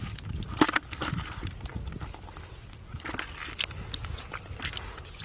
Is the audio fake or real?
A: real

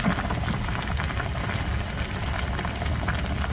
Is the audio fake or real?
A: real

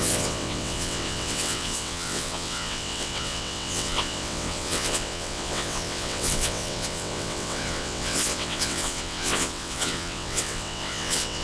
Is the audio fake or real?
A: fake